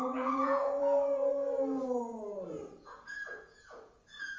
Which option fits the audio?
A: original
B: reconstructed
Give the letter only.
B